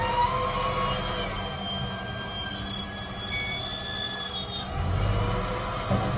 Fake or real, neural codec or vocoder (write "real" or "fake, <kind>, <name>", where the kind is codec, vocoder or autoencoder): real